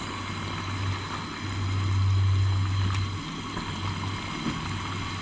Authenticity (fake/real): real